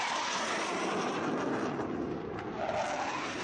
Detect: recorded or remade recorded